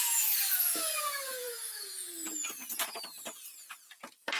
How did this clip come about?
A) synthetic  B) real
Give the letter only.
A